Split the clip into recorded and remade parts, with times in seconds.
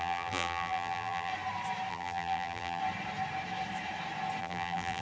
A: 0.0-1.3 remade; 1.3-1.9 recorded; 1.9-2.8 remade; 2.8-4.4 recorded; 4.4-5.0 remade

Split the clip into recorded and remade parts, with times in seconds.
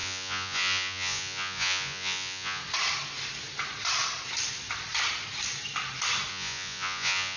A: 0.0-2.6 remade; 2.6-6.3 recorded; 6.3-7.4 remade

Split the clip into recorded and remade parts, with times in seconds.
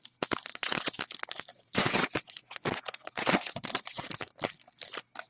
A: 0.0-0.5 recorded; 0.5-1.0 remade; 1.0-1.5 recorded; 1.5-4.1 remade; 4.1-5.3 recorded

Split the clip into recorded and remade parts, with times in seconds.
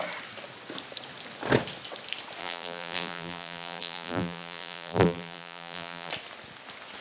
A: 0.0-2.4 recorded; 2.4-6.1 remade; 6.1-7.0 recorded